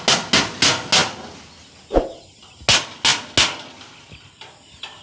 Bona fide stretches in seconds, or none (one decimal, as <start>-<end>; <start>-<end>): 0.0-5.0